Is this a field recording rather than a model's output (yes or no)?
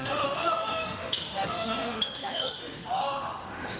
no